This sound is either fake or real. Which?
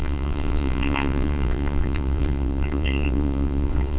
fake